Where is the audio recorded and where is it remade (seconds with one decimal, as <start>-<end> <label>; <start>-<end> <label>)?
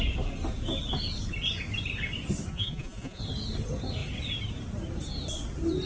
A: 0.0-2.5 recorded; 2.5-3.2 remade; 3.2-5.9 recorded